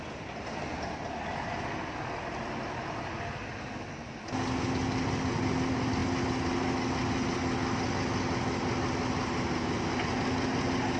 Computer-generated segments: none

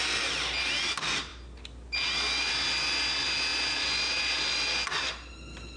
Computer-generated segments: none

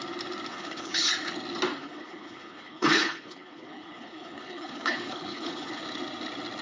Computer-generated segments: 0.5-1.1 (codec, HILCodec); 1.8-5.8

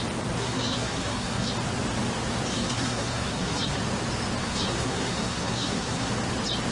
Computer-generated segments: 0.4-1.5 (codec, SNAC); 2.5-3.8; 4.4-6.1

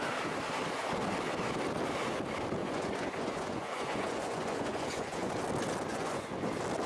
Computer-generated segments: 2.6-5.3 (vocoder, Vocos); 5.9-6.5

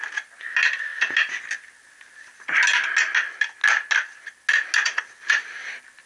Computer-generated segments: none

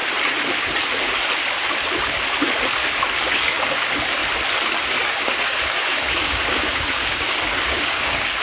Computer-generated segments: 3.2-4.2 (codec, DAC); 4.9-8.4